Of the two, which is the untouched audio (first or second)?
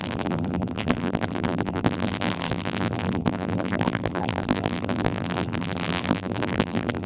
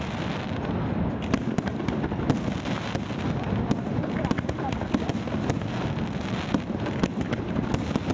second